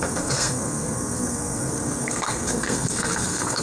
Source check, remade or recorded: remade